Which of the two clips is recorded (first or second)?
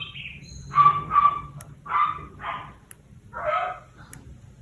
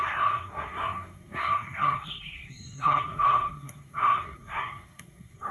first